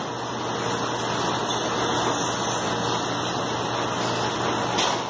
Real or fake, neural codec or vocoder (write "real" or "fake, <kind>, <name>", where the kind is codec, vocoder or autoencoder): real